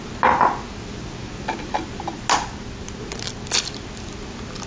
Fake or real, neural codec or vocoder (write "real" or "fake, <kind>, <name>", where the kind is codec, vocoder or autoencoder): real